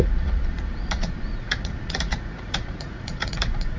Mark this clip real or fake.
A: fake